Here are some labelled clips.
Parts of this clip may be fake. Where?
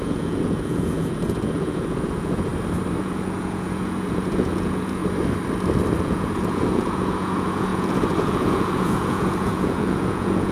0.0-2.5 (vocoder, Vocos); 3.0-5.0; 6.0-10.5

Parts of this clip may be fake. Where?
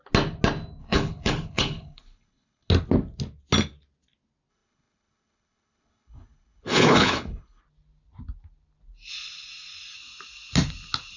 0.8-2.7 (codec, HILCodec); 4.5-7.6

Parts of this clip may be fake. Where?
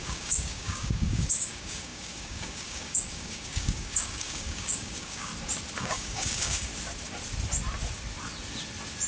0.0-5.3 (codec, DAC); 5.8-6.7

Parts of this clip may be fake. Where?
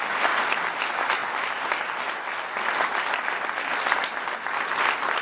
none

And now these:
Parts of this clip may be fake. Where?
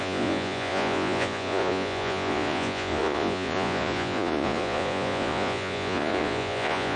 0.0-7.0 (vocoder, Vocos)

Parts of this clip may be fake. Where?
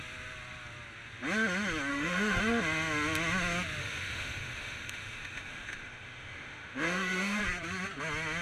1.9-2.4 (autoencoder, DAC-VAE); 3.8-7.4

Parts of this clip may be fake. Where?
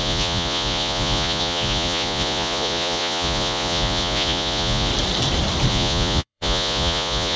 0.0-4.9 (vocoder, Vocos); 5.7-7.4